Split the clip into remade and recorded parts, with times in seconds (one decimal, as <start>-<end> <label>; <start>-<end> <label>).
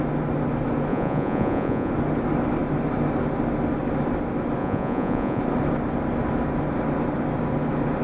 0.0-0.9 recorded; 0.9-1.9 remade; 1.9-4.6 recorded; 4.6-5.4 remade; 5.4-8.0 recorded